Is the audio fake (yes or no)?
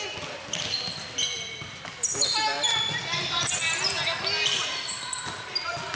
no